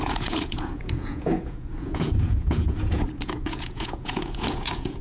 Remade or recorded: remade